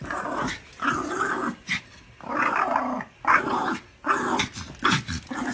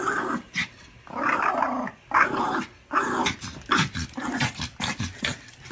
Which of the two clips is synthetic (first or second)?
second